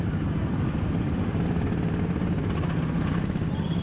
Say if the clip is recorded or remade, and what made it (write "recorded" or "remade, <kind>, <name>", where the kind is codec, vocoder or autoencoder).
recorded